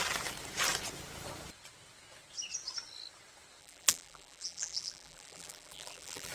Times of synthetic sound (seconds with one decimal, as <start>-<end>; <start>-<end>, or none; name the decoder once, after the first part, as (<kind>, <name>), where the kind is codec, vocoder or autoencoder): 3.6-6.3 (vocoder, BigVGAN v2)

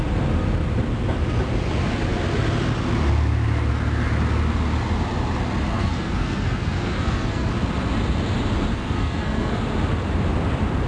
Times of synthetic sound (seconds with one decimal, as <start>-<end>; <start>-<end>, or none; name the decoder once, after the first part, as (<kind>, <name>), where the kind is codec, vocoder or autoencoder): 5.7-7.5 (codec, SNAC); 8.7-9.6

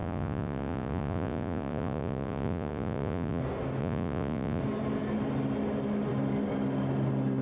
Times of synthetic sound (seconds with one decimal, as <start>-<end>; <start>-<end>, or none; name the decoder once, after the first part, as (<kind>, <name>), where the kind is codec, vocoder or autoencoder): 0.0-3.4 (vocoder, Vocos); 3.8-4.6

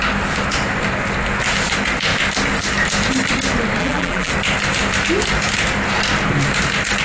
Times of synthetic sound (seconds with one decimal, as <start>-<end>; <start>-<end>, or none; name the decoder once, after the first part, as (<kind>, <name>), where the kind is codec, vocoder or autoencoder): 3.8-4.3 (vocoder, BigVGAN v2)

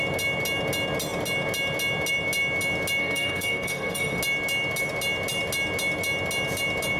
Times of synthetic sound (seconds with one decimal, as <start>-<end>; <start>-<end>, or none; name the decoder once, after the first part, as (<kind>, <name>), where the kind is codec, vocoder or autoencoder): 3.0-4.2 (codec, SNAC)

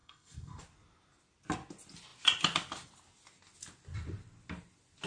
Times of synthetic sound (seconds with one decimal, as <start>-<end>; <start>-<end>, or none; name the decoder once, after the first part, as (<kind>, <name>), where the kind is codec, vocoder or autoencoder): 0.0-0.6 (codec, SNAC)